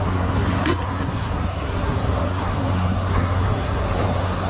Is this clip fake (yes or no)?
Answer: yes